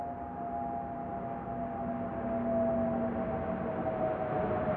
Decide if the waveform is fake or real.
real